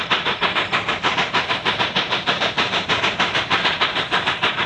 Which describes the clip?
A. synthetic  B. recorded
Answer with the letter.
A